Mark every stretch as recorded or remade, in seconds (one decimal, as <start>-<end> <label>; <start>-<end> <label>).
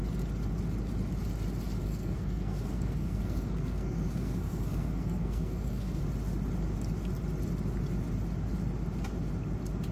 0.0-1.8 recorded; 1.8-6.0 remade; 6.0-9.9 recorded